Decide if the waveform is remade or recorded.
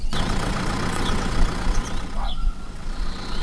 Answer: remade